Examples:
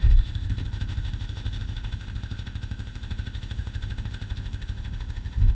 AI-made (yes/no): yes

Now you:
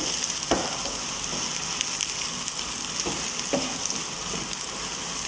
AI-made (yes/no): no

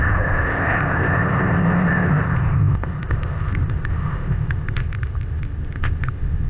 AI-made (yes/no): yes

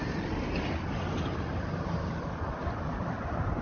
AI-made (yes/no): no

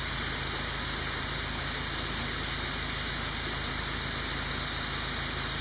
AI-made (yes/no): no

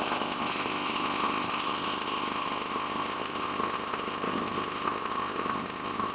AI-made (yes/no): yes